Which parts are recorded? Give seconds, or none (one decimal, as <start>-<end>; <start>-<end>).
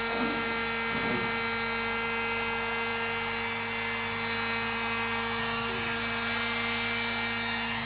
0.0-7.9